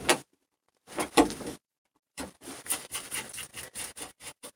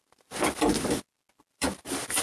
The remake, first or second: first